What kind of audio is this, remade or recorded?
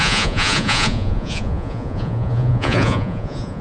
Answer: remade